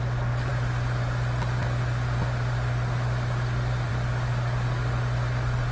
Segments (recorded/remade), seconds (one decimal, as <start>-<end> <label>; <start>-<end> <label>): 0.0-5.7 recorded